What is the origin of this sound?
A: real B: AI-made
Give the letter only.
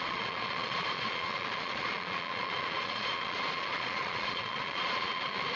B